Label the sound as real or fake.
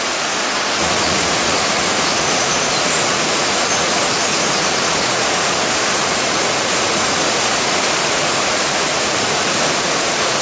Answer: fake